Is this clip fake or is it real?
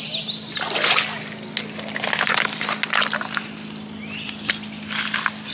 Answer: real